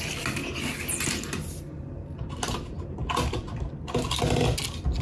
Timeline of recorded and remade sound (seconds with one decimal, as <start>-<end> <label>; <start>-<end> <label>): 0.0-5.0 recorded